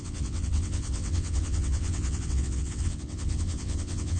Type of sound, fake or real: fake